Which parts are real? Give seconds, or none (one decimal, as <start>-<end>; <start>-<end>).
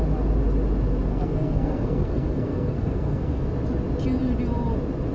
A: 0.0-1.1; 3.5-5.1